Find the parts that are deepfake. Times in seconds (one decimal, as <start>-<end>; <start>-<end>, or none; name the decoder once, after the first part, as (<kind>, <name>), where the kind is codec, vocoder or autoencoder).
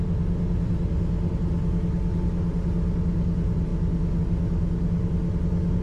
none